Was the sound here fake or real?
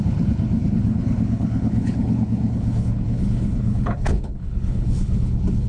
fake